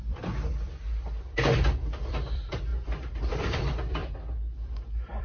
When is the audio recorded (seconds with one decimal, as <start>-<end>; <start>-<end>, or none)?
2.7-3.3; 4.0-5.2